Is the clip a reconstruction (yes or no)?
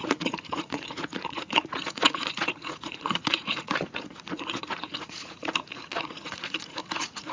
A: yes